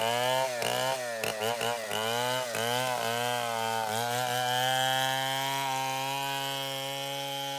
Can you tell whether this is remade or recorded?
recorded